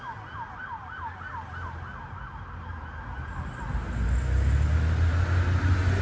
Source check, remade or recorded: recorded